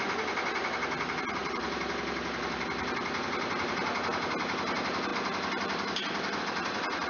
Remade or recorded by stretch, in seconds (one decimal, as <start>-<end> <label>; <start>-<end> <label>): 0.0-5.1 recorded; 5.1-6.4 remade; 6.4-7.1 recorded